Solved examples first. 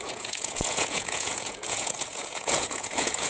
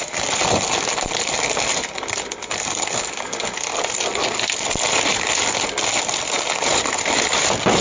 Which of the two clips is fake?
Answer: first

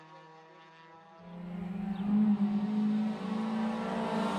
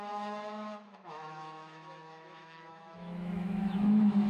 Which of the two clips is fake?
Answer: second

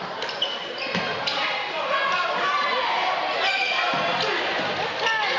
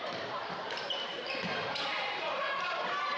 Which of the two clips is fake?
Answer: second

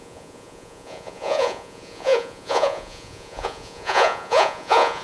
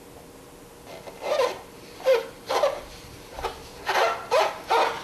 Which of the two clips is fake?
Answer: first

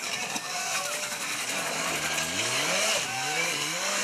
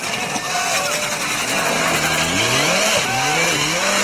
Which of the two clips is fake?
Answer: first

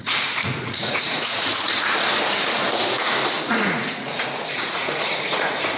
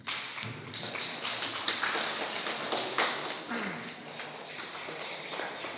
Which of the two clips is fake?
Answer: first